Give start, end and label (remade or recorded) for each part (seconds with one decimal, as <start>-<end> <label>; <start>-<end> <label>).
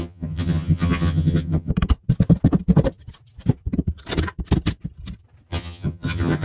0.0-1.7 remade; 1.7-5.5 recorded; 5.5-6.4 remade